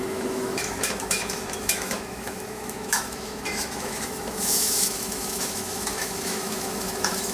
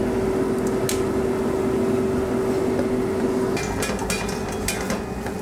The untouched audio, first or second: second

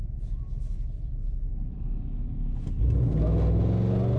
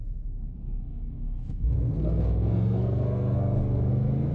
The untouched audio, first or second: first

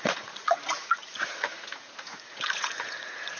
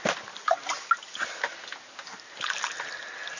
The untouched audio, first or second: second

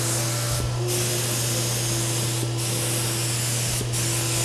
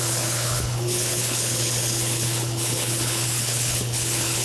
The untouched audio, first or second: first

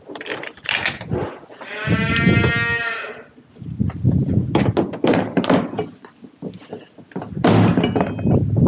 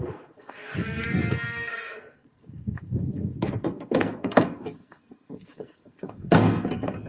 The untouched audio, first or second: first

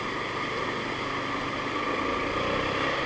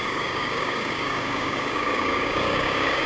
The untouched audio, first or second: first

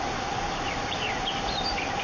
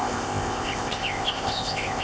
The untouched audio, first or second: first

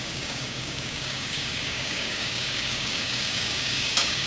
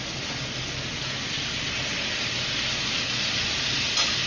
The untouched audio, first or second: second